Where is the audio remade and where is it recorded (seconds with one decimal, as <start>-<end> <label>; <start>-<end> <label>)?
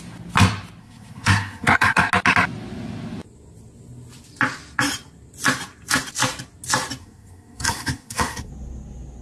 0.0-0.8 recorded; 0.8-2.1 remade; 2.1-7.0 recorded; 7.0-8.5 remade; 8.5-9.2 recorded